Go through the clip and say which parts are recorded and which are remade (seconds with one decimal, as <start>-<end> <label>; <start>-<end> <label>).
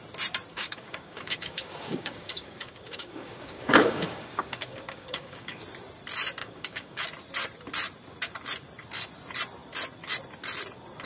0.0-0.5 recorded; 0.5-5.6 remade; 5.6-6.4 recorded; 6.4-7.0 remade; 7.0-11.1 recorded